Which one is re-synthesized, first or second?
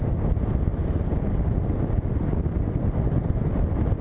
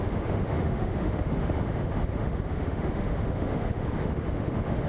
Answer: second